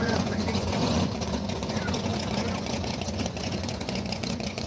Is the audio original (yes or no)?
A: no